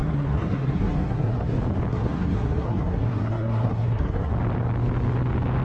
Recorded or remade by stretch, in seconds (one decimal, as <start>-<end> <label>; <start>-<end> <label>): 0.0-1.5 remade; 1.5-1.9 recorded; 1.9-4.3 remade; 4.3-5.6 recorded